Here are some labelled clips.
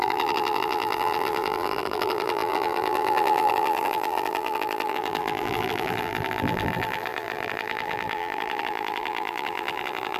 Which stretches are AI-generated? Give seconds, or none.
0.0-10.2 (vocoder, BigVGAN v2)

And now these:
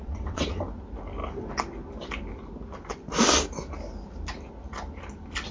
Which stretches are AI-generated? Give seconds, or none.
0.0-0.6 (vocoder, WaveNeXt)

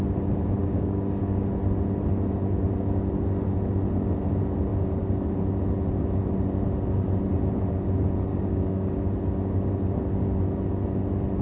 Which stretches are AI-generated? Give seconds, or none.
0.6-1.5 (codec, DAC); 8.3-9.0

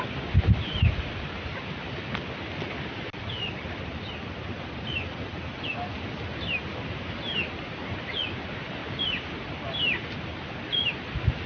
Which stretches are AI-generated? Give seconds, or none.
none